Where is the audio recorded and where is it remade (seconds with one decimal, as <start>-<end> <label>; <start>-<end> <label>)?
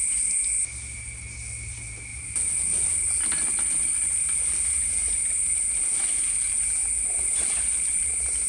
0.0-2.1 recorded; 2.1-3.1 remade; 3.1-5.0 recorded; 5.0-6.2 remade; 6.2-6.8 recorded; 6.8-8.5 remade